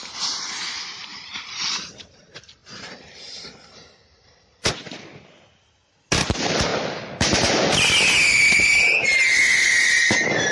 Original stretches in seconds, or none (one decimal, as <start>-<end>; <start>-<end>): 0.0-1.1; 1.7-10.5